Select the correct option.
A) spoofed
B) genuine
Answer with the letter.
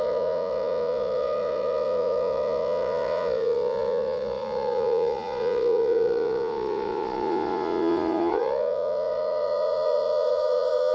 A